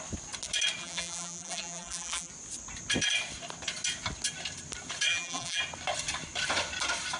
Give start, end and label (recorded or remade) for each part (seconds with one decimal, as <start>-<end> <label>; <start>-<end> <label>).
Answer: 0.0-0.8 recorded; 0.8-2.3 remade; 2.3-5.1 recorded; 5.1-5.6 remade; 5.6-7.2 recorded